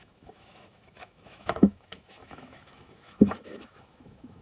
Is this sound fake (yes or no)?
yes